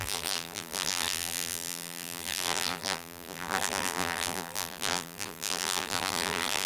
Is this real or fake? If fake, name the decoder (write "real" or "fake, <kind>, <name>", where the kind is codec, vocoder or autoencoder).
fake, vocoder, BigVGAN v2